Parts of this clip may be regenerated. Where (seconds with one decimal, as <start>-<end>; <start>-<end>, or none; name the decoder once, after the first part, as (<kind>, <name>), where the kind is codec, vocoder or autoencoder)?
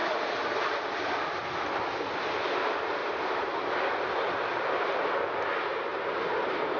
3.0-3.7 (vocoder, BigVGAN v2); 5.9-6.8